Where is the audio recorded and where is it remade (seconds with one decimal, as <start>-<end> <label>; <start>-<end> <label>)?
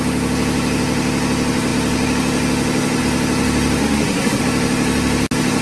0.0-3.8 recorded; 3.8-4.4 remade; 4.4-5.6 recorded